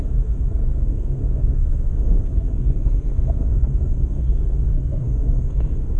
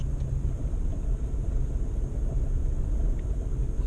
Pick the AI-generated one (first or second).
first